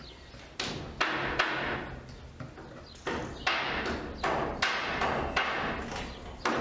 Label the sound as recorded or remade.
recorded